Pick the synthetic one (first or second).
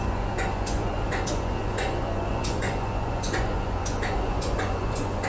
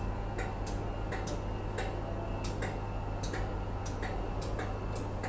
first